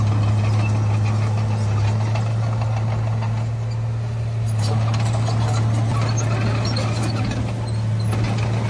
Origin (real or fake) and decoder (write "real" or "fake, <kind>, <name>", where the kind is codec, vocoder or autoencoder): real